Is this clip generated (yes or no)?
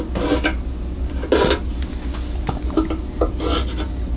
no